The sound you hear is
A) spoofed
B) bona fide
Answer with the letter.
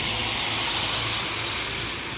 B